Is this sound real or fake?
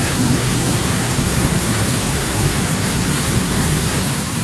fake